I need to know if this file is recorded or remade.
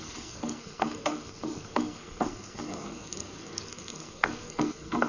remade